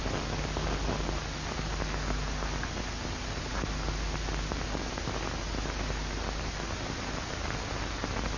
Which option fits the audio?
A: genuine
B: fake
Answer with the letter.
A